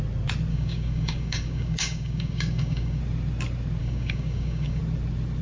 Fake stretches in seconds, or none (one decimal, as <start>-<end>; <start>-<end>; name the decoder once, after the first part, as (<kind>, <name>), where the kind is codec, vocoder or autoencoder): 0.5-3.0 (codec, DAC); 3.8-4.8